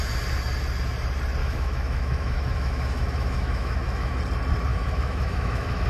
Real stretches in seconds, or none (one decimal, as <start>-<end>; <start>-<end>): 0.0-1.4; 4.2-4.7